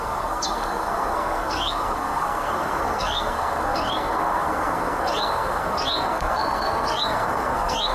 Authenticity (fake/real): fake